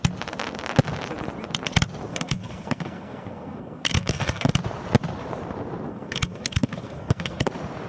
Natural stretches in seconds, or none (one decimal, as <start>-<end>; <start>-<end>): 0.0-2.1; 4.5-5.9; 7.5-7.9